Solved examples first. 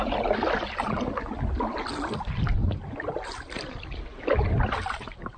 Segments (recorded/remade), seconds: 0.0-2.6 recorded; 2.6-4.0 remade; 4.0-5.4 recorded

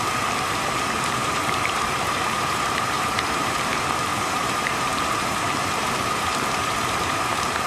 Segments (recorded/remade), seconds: 0.0-1.2 recorded; 1.2-3.5 remade; 3.5-4.1 recorded; 4.1-7.7 remade

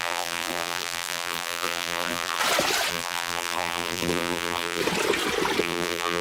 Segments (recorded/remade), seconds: 0.0-2.4 remade; 2.4-2.9 recorded; 2.9-4.8 remade; 4.8-5.6 recorded; 5.6-6.2 remade

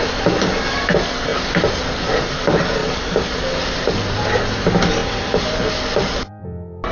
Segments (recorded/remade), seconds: 0.0-1.3 remade; 1.3-2.1 recorded; 2.1-6.9 remade

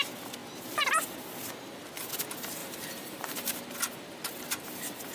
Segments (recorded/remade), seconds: 0.0-2.6 recorded; 2.6-3.6 remade; 3.6-5.1 recorded

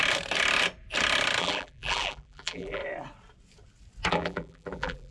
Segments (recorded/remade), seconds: 0.0-1.4 recorded; 1.4-2.8 remade; 2.8-4.1 recorded; 4.1-5.1 remade